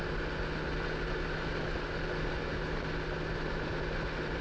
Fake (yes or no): no